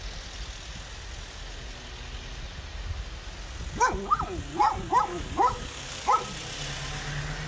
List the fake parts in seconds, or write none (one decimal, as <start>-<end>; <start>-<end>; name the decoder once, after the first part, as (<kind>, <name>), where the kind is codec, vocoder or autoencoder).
5.1-6.1 (codec, DAC)